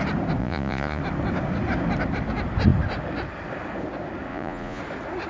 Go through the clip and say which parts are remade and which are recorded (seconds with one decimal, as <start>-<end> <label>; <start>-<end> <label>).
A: 0.0-0.4 recorded; 0.4-1.0 remade; 1.0-4.3 recorded; 4.3-4.8 remade; 4.8-5.3 recorded